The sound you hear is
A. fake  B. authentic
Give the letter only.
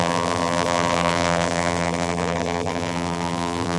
A